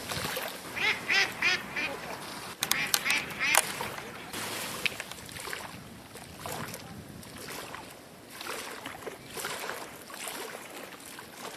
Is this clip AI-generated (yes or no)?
no